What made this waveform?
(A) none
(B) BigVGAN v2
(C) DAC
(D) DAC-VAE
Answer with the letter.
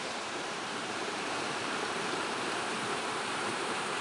B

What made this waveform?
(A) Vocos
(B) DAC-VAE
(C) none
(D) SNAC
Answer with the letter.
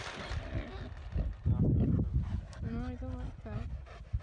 C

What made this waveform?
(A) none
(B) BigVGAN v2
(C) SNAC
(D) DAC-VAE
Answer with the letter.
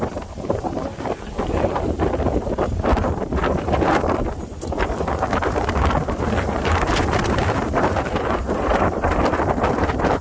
B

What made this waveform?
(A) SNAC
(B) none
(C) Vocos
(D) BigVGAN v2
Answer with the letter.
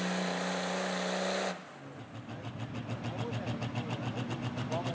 B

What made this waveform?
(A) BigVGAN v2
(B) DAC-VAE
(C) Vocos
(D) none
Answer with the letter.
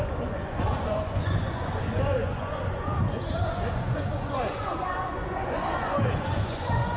C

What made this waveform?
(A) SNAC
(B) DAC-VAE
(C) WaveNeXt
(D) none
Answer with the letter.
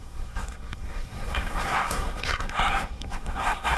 A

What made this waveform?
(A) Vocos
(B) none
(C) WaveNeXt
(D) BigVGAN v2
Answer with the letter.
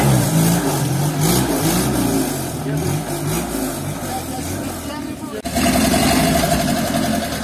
B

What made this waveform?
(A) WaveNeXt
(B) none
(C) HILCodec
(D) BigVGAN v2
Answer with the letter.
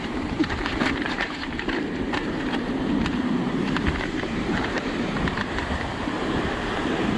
D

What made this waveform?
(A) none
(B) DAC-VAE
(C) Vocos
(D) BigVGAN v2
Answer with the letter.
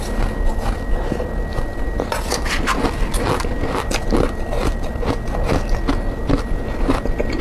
A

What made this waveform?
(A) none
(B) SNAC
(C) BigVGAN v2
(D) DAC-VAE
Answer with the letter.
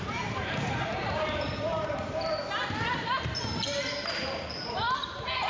C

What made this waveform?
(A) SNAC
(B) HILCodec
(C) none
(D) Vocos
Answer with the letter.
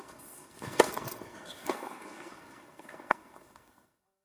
A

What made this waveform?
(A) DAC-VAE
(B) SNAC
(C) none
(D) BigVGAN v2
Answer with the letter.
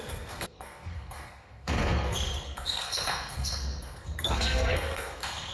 B